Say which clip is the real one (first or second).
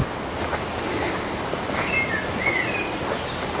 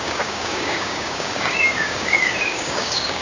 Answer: first